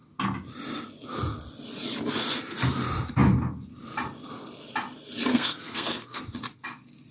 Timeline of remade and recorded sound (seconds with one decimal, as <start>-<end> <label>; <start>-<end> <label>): 0.0-5.3 recorded; 5.3-6.2 remade; 6.2-7.1 recorded